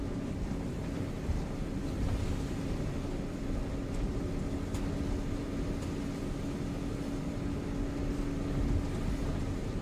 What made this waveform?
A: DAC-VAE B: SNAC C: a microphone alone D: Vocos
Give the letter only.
C